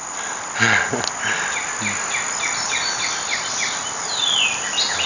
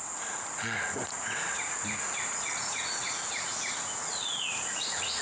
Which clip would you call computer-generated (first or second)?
second